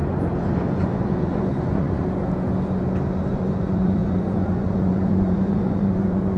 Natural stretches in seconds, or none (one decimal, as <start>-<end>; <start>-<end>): 0.0-0.7; 2.2-3.3